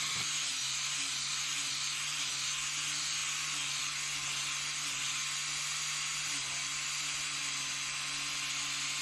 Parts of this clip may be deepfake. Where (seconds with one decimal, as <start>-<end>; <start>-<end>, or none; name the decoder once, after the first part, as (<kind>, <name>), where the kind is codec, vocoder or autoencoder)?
none